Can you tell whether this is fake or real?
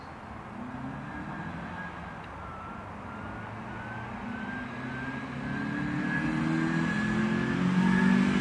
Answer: real